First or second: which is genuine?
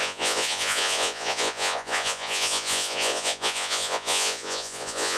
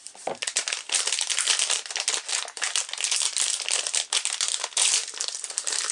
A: second